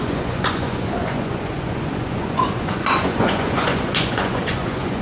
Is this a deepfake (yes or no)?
yes